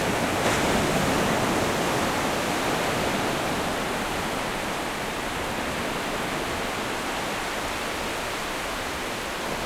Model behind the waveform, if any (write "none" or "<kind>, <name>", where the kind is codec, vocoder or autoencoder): none